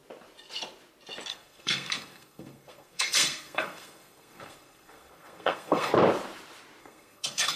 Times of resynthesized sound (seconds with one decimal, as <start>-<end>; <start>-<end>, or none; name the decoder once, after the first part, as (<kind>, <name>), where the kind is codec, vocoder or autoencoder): 1.3-5.9 (codec, SNAC); 6.8-7.6